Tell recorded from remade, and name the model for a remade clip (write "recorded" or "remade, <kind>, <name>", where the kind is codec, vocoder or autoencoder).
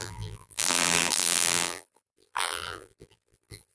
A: remade, vocoder, BigVGAN v2